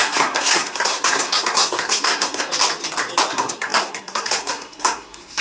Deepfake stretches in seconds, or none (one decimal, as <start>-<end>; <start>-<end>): 0.0-2.5; 3.3-5.4